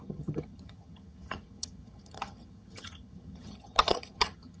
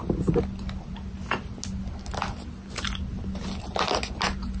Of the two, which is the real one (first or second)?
second